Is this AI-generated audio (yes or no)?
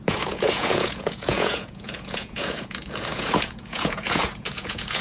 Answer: yes